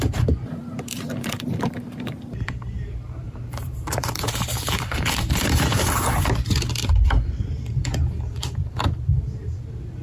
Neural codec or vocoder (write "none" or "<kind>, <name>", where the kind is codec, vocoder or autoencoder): vocoder, BigVGAN v2